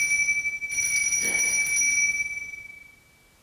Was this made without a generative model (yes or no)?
yes